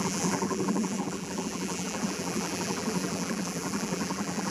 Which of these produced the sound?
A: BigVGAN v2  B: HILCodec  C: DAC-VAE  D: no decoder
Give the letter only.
A